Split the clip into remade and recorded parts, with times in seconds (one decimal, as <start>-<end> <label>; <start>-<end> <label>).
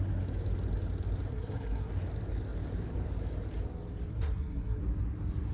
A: 0.0-1.3 recorded; 1.3-1.9 remade; 1.9-4.1 recorded; 4.1-4.8 remade; 4.8-5.5 recorded